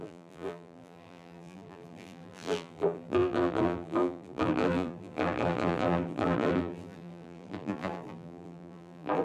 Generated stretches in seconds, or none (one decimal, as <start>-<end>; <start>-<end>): 0.0-9.2